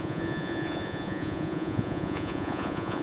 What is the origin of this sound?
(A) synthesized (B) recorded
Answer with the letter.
A